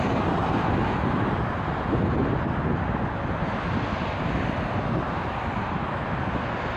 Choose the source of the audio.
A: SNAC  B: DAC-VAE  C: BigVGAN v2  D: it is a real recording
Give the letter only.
D